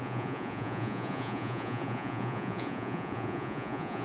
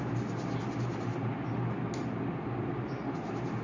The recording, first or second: second